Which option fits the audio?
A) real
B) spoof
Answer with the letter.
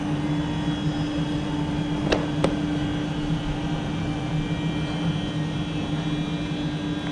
A